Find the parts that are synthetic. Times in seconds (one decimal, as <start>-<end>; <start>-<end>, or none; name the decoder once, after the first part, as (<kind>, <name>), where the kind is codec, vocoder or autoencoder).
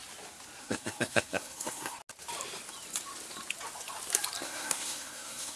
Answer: 0.6-2.0 (codec, SNAC); 4.4-5.6